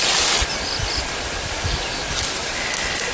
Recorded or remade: recorded